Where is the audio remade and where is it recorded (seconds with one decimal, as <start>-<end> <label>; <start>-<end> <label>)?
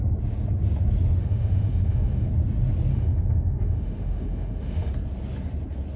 0.0-1.2 recorded; 1.2-2.3 remade; 2.3-2.9 recorded; 2.9-4.9 remade; 4.9-6.0 recorded